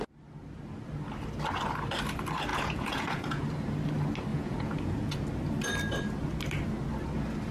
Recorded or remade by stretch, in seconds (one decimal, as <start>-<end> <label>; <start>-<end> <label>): 0.0-2.5 recorded; 2.5-3.4 remade; 3.4-4.3 recorded; 4.3-5.1 remade; 5.1-7.5 recorded